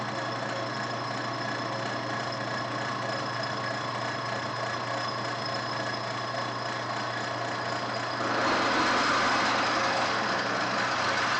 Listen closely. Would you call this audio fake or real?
real